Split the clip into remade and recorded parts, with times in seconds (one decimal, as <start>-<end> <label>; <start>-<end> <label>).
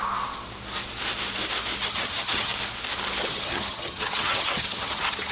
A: 0.0-1.8 recorded; 1.8-2.5 remade; 2.5-3.2 recorded; 3.2-5.3 remade